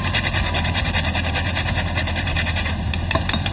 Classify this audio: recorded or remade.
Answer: remade